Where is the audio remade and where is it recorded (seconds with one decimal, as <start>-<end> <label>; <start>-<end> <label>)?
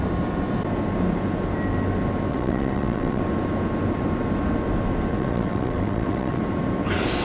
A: 0.0-2.3 recorded; 2.3-3.2 remade; 3.2-5.1 recorded; 5.1-6.4 remade; 6.4-7.2 recorded